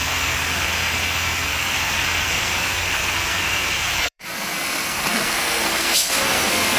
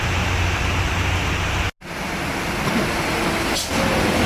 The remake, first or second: first